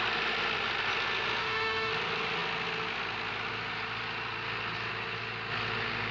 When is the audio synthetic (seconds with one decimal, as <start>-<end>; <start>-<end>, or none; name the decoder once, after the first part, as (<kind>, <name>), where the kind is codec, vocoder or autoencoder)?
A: 1.4-1.9 (autoencoder, DAC-VAE)